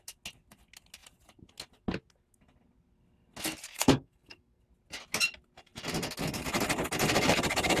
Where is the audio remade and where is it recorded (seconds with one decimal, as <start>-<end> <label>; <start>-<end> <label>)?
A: 0.0-3.7 recorded; 3.7-4.6 remade; 4.6-7.8 recorded